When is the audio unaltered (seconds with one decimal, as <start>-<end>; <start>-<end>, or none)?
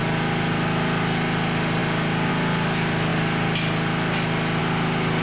0.0-1.8; 2.3-5.2